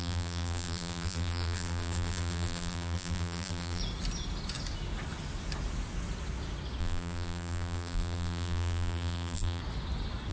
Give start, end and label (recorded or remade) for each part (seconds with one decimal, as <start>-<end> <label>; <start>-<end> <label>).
0.0-3.8 remade; 3.8-6.8 recorded; 6.8-9.6 remade; 9.6-10.3 recorded